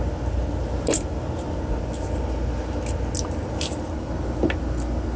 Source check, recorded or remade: recorded